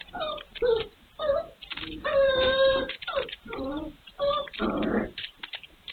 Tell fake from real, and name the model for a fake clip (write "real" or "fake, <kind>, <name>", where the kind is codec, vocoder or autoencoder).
fake, vocoder, BigVGAN v2